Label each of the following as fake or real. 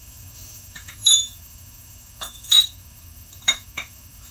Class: fake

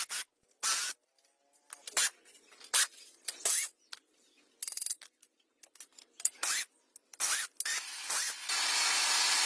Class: real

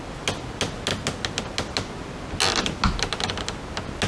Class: real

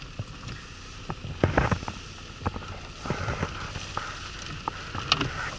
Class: real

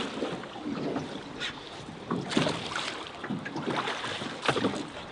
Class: fake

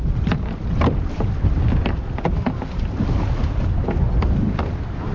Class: real